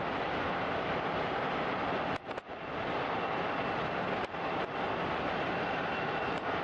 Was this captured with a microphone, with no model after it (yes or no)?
yes